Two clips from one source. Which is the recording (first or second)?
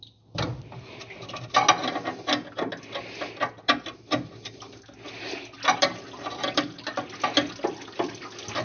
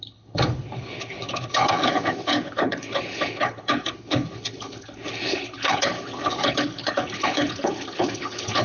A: first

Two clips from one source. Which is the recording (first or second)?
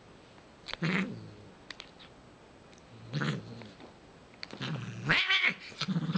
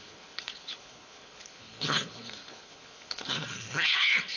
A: first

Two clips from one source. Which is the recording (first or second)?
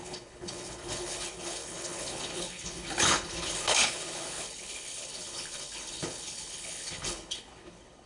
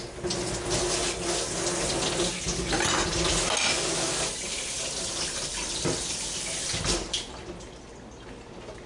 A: second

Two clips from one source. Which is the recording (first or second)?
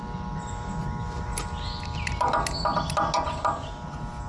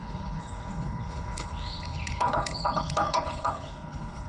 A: first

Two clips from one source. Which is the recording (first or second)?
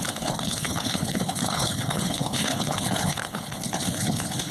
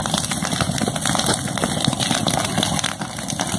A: second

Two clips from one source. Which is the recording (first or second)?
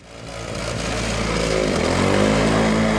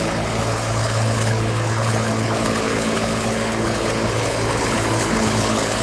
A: first